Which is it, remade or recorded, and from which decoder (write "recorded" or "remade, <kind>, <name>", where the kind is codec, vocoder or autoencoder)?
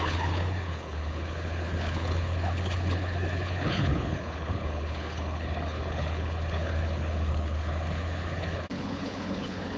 remade, codec, HILCodec